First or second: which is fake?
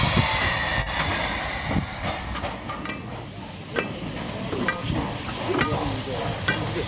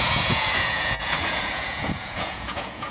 second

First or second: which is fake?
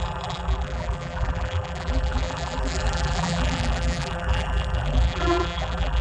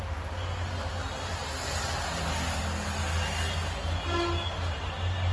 first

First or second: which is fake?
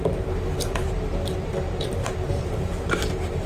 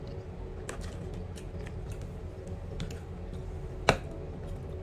first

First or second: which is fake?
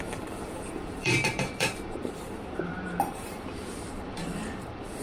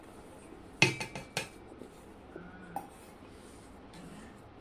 first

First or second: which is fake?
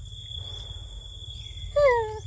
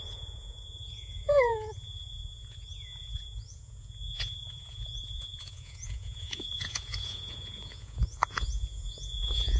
second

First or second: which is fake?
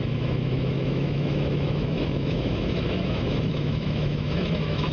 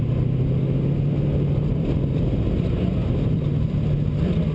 first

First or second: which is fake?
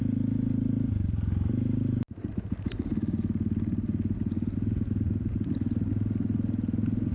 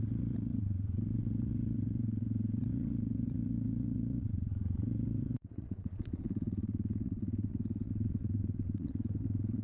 second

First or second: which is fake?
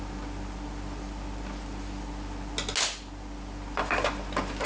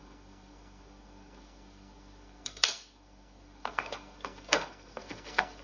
second